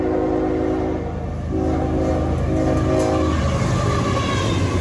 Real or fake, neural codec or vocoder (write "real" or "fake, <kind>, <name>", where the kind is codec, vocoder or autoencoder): real